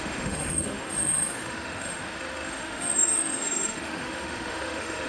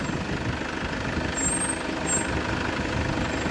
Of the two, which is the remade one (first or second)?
first